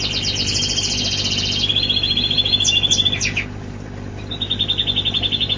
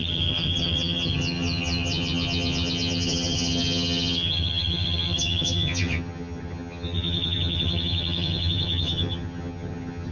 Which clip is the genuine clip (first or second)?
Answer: first